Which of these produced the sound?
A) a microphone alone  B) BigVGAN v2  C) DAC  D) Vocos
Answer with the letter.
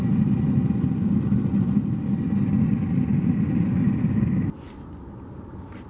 A